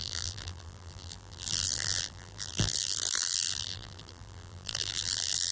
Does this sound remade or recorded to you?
remade